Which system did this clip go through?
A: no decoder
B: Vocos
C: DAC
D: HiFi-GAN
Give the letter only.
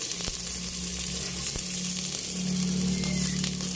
A